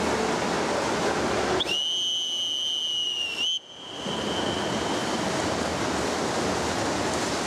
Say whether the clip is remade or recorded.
recorded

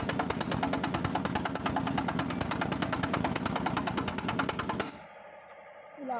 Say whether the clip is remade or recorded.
recorded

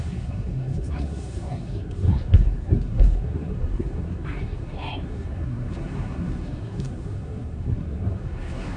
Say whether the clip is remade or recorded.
remade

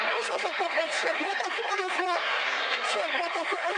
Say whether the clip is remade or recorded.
remade